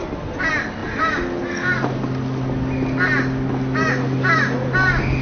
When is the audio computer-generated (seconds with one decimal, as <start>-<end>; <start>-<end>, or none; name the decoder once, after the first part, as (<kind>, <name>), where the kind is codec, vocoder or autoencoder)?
none